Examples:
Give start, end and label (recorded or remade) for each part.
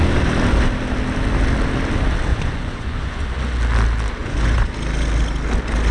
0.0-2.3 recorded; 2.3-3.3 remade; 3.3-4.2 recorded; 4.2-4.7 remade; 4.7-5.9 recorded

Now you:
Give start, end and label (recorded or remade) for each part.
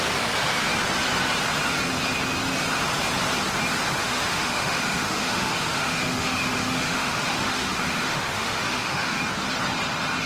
0.0-4.0 recorded; 4.0-9.2 remade; 9.2-10.3 recorded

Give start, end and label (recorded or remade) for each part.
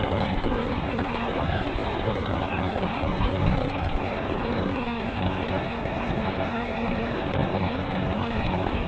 0.0-8.9 remade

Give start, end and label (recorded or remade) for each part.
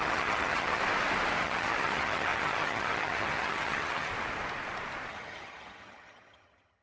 0.0-0.8 remade; 0.8-1.4 recorded; 1.4-4.1 remade; 4.1-5.1 recorded; 5.1-6.8 remade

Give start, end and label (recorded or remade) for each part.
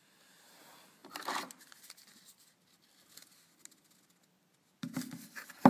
0.0-5.7 recorded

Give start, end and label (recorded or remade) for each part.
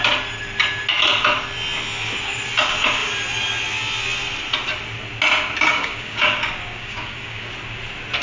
0.0-5.7 recorded; 5.7-7.5 remade; 7.5-8.2 recorded